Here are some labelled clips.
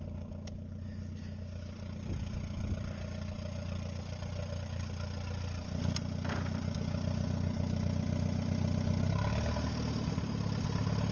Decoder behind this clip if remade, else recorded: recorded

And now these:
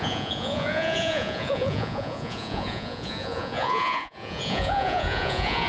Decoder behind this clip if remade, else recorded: remade, vocoder, Vocos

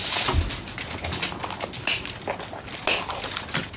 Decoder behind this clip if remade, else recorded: recorded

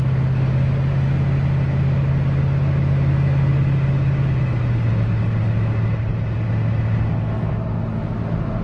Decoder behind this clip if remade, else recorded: recorded